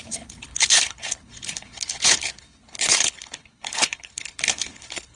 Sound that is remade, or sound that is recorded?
remade